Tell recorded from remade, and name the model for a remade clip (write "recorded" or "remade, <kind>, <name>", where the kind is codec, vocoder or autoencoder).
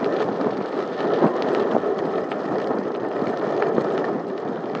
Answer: recorded